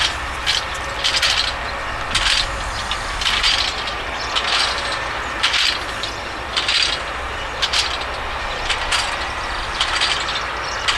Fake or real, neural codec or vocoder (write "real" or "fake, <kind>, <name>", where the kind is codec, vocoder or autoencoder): real